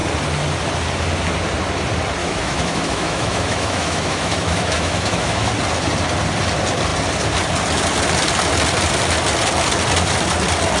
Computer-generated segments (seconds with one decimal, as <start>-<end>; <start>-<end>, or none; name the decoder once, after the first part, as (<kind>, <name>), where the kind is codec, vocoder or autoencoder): 2.2-5.5 (autoencoder, DAC-VAE)